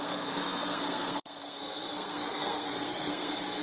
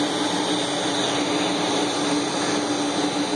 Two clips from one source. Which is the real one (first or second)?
second